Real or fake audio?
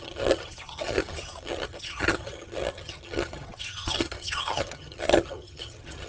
fake